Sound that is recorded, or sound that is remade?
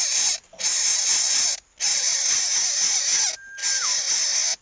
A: recorded